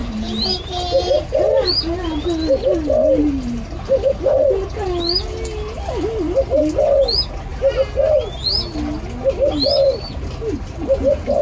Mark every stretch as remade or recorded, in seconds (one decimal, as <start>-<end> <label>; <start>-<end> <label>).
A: 0.0-1.4 remade; 1.4-11.4 recorded